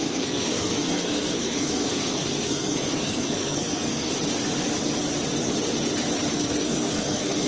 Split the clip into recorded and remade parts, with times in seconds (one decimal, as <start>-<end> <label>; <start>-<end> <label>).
0.0-4.1 remade; 4.1-6.3 recorded; 6.3-7.5 remade